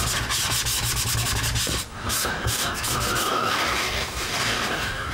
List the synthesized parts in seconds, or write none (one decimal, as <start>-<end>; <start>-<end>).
1.9-5.1